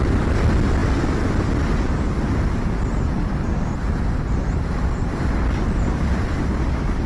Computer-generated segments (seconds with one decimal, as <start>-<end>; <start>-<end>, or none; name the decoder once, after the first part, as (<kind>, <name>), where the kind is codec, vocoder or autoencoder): none